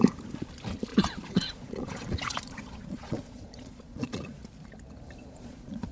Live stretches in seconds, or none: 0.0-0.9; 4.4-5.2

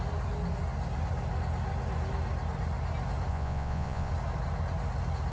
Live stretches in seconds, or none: 0.0-3.3; 4.1-5.3

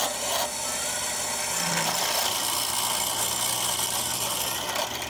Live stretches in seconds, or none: 0.0-5.1

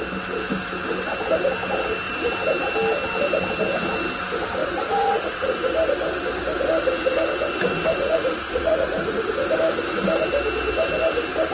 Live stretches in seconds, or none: 0.0-4.6; 5.6-8.0; 9.3-11.5